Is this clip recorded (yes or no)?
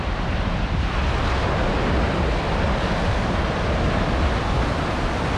yes